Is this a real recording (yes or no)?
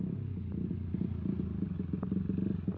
yes